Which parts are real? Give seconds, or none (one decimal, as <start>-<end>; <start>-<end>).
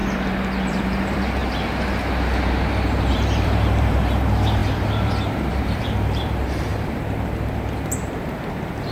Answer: 0.0-0.7; 1.4-3.1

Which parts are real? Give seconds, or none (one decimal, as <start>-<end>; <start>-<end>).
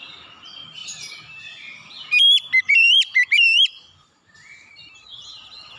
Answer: 0.0-0.8; 4.3-5.8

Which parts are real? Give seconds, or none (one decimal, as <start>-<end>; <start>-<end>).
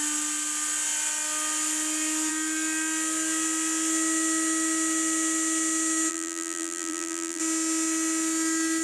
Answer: 0.0-6.1; 7.4-8.8